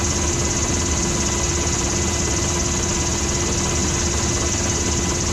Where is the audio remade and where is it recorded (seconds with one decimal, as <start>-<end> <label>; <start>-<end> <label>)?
0.0-5.3 recorded